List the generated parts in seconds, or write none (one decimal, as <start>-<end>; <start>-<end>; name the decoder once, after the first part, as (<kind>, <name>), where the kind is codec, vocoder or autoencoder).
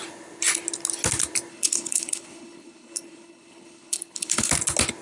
1.5-4.5 (codec, HILCodec)